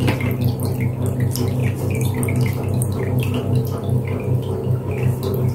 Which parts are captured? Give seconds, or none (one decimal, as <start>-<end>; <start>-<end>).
0.0-5.5